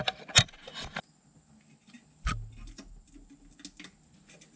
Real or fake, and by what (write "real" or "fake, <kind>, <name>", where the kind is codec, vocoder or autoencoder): real